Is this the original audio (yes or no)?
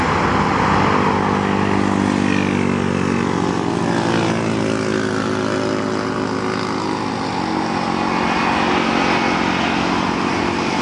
yes